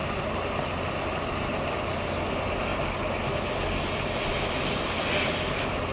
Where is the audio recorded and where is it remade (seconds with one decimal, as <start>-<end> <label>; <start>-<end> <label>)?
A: 0.0-1.3 remade; 1.3-5.9 recorded